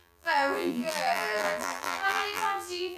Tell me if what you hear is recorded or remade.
remade